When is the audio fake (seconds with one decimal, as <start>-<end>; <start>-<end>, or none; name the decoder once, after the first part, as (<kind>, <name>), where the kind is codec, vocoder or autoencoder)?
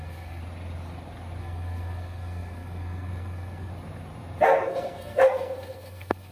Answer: 0.0-0.4 (codec, SNAC); 1.4-3.7; 4.4-6.3